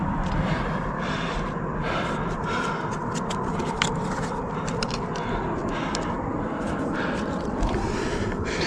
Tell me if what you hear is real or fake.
fake